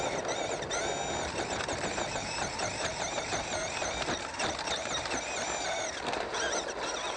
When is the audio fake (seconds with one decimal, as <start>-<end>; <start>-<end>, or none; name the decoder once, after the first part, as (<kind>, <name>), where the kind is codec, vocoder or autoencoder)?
2.2-6.3 (vocoder, BigVGAN v2)